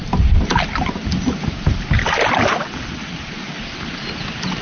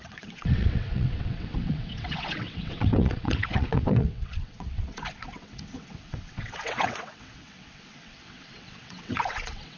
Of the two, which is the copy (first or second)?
second